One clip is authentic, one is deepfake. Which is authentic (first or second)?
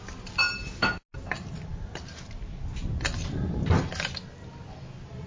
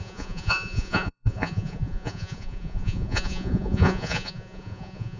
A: first